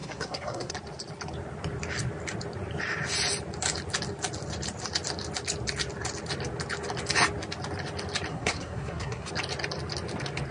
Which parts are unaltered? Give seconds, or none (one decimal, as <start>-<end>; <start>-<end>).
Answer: 0.7-8.3; 9.3-10.5

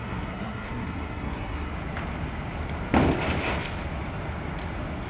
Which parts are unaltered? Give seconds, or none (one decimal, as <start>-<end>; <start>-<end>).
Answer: 1.7-5.1

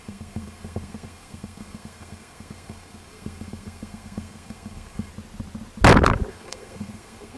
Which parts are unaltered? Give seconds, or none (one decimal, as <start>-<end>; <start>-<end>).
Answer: 5.1-6.3

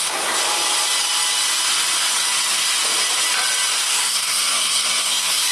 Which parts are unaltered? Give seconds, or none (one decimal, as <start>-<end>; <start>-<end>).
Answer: 0.4-3.7

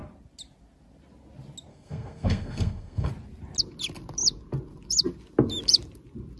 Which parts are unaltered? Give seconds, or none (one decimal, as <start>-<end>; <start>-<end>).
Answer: 0.0-1.7; 3.1-6.4